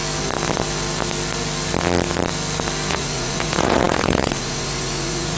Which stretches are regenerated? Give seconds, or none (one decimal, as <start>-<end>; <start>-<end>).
2.9-5.4